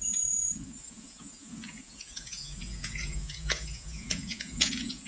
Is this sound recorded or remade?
remade